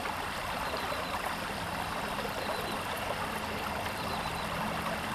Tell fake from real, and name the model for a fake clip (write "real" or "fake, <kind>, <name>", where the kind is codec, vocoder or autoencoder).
real